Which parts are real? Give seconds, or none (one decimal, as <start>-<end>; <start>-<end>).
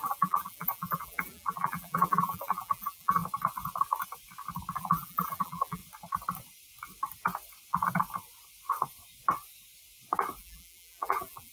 3.2-4.8; 5.8-10.4